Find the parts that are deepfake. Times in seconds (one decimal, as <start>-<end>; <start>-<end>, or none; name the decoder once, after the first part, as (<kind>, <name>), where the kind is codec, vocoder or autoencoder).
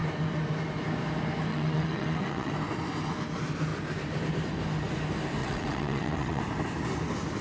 1.5-2.5 (vocoder, WaveNeXt); 5.4-6.4